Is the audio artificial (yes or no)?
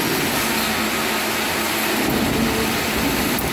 no